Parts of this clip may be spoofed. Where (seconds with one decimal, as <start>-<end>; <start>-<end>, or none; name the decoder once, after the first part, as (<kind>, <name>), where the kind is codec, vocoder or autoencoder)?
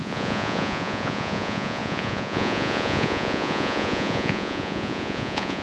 0.0-5.6 (vocoder, Vocos)